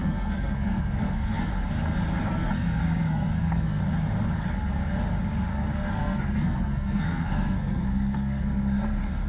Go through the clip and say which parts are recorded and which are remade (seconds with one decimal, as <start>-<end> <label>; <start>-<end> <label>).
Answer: 0.0-1.5 remade; 1.5-2.2 recorded; 2.2-3.8 remade; 3.8-5.5 recorded; 5.5-8.8 remade; 8.8-9.3 recorded